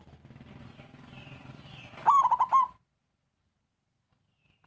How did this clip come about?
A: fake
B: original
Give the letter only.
B